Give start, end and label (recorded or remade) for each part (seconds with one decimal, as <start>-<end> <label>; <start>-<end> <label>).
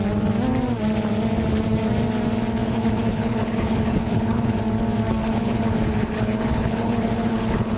0.0-2.6 recorded; 2.6-4.6 remade; 4.6-5.2 recorded; 5.2-7.8 remade